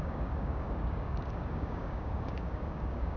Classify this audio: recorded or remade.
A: remade